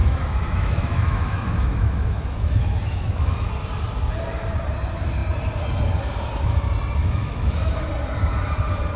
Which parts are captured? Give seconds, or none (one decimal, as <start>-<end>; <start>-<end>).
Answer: 3.5-7.0; 7.9-9.0